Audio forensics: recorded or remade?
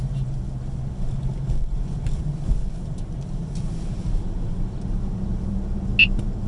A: recorded